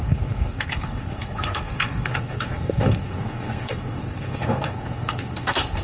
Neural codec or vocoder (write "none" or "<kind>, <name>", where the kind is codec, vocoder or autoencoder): codec, SNAC